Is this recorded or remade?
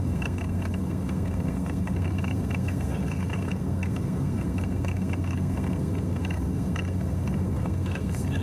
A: remade